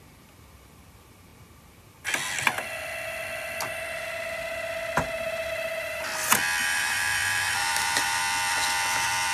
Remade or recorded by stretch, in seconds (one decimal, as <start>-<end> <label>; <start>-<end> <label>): 0.0-6.6 recorded; 6.6-8.2 remade; 8.2-9.3 recorded